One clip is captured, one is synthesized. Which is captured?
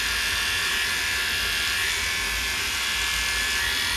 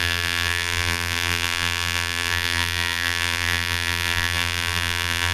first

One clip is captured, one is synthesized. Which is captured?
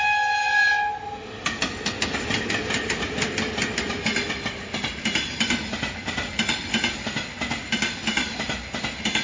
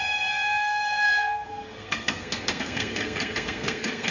first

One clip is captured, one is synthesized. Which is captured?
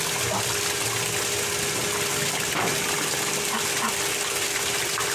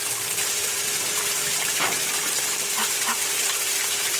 first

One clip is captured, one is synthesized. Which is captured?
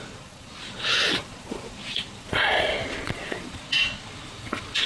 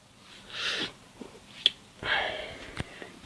second